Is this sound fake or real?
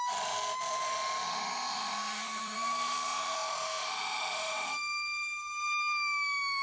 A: fake